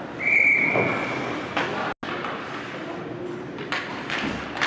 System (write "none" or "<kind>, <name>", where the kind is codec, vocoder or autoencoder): none